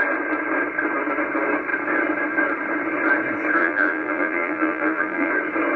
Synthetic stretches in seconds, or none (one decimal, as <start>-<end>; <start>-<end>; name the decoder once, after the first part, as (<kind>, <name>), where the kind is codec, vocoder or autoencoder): 3.6-5.3 (vocoder, BigVGAN v2)